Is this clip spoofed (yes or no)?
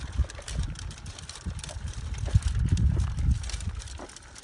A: yes